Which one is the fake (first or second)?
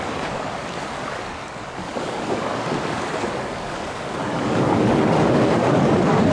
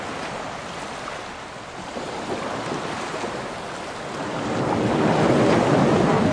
first